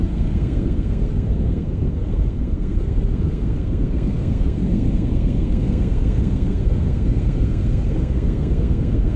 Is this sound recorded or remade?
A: remade